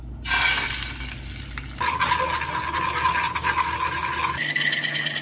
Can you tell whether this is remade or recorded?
recorded